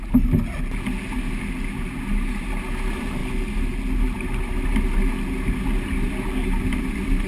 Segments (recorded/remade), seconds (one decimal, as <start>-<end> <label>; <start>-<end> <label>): 0.0-7.3 recorded